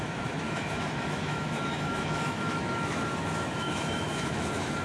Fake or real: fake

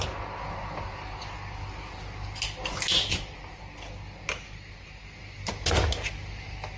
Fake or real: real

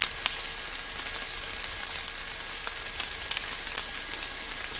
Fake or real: real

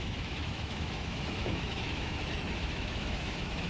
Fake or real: fake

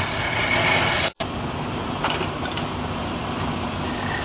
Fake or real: real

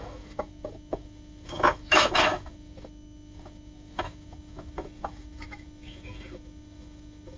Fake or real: fake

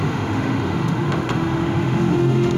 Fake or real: fake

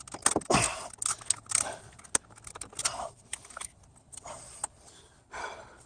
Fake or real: real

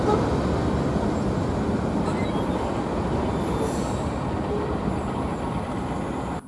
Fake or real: real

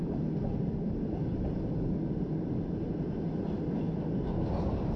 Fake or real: real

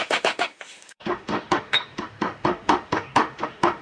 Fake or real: fake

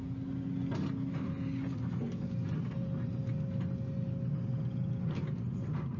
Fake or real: real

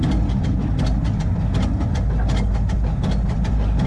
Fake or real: real